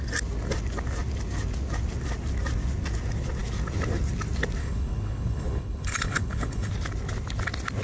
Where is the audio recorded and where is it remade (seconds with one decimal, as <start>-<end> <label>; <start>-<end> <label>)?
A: 0.0-4.6 recorded; 4.6-6.7 remade; 6.7-7.8 recorded